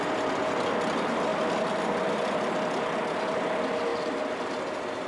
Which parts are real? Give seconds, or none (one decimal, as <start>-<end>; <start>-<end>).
0.0-5.1